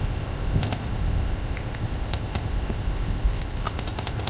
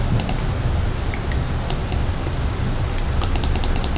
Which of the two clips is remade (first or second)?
first